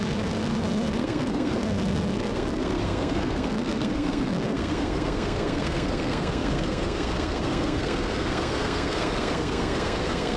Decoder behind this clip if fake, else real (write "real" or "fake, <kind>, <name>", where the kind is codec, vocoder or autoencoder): fake, codec, SNAC